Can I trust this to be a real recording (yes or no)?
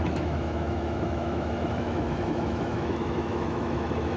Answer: no